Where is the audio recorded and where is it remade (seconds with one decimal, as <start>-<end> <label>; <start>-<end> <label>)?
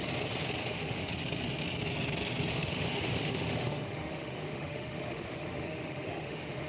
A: 0.0-0.6 recorded; 0.6-1.1 remade; 1.1-2.5 recorded; 2.5-6.7 remade